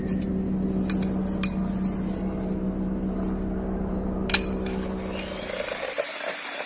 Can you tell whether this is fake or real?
real